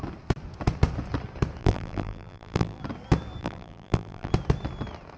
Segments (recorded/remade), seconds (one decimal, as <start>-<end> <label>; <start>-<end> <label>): 0.0-1.6 recorded; 1.6-2.8 remade; 2.8-3.4 recorded; 3.4-4.3 remade; 4.3-5.2 recorded